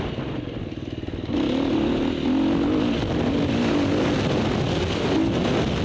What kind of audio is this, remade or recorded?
recorded